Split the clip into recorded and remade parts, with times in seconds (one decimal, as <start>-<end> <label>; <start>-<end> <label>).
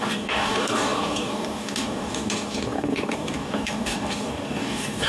0.0-5.1 remade